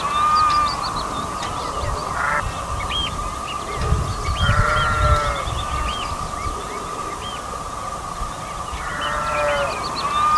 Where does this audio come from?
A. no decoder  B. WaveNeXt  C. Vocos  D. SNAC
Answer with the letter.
A